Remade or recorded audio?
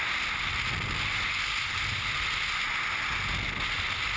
recorded